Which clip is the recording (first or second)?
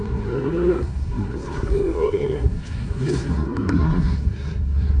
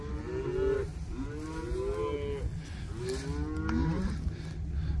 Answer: second